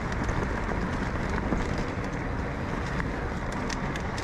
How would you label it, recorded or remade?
recorded